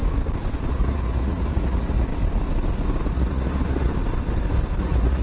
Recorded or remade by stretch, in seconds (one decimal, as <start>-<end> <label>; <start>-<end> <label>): 0.0-0.7 recorded; 0.7-2.1 remade; 2.1-3.1 recorded; 3.1-3.9 remade; 3.9-4.8 recorded; 4.8-5.2 remade